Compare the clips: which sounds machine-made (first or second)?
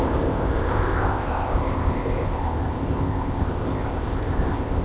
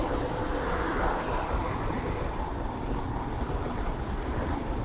first